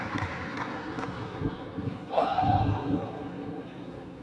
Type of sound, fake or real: fake